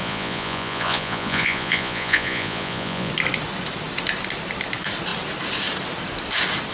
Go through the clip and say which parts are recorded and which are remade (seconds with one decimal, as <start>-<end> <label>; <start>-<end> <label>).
0.0-3.1 remade; 3.1-6.7 recorded